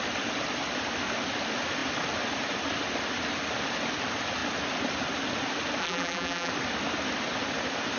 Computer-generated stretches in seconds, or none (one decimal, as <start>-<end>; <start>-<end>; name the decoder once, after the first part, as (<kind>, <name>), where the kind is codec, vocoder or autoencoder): 5.8-6.5 (vocoder, BigVGAN v2)

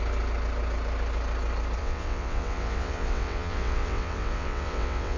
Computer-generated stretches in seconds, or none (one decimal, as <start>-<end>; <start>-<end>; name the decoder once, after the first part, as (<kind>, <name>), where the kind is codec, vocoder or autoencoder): 1.8-5.2 (vocoder, WaveNeXt)

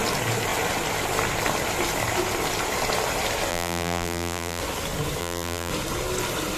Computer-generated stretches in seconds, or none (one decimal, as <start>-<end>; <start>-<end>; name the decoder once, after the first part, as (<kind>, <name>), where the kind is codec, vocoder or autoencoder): 3.5-4.6 (vocoder, BigVGAN v2); 5.2-5.7

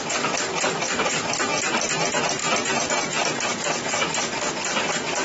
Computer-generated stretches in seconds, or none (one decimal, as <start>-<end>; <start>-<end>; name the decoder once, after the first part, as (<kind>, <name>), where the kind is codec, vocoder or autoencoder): none